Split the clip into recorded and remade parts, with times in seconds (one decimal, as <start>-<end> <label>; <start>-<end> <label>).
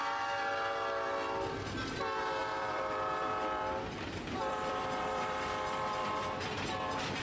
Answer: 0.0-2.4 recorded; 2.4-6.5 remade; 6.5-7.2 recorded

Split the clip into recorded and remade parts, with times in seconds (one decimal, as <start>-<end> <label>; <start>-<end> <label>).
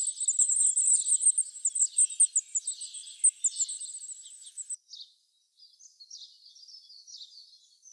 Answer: 0.0-7.9 recorded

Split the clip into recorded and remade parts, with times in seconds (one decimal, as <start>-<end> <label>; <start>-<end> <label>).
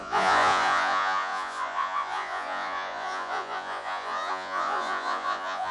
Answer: 0.0-5.7 remade